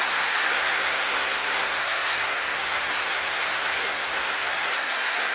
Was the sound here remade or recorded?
remade